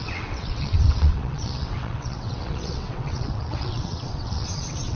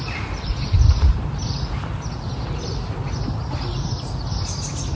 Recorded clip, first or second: second